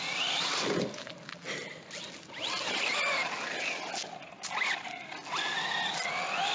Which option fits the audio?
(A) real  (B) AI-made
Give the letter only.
A